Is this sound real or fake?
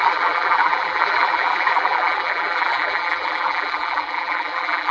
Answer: fake